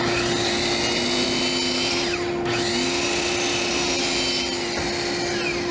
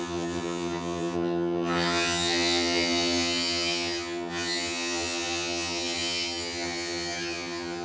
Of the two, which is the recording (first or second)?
first